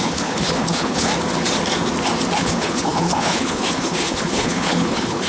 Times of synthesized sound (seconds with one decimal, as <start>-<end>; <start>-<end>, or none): 0.0-1.1; 2.4-5.3